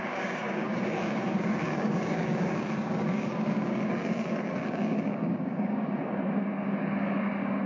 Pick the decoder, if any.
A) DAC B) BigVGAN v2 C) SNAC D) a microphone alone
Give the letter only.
A